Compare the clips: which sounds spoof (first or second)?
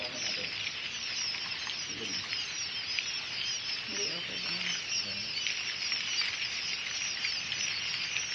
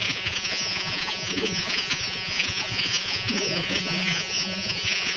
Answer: second